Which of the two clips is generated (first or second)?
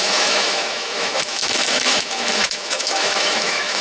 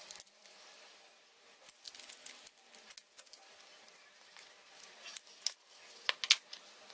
first